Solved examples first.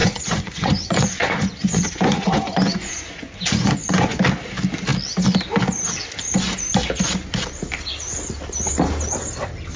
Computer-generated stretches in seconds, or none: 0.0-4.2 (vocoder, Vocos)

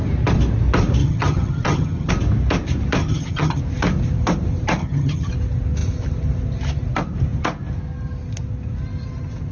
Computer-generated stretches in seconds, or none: 1.0-2.1 (vocoder, HiFi-GAN); 3.0-3.6; 4.8-5.3

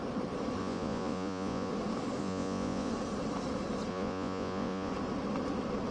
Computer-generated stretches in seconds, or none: 0.6-1.7 (vocoder, Vocos); 2.2-2.9; 3.9-4.9

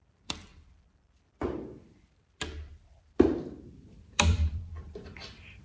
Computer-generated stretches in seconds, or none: 0.0-5.6 (vocoder, BigVGAN v2)

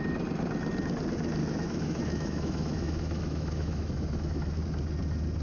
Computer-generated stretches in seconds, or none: 1.4-4.6 (autoencoder, DAC-VAE)

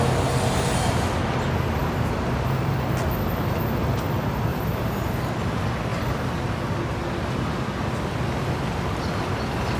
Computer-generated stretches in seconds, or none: 1.8-2.7 (vocoder, BigVGAN v2); 4.5-5.0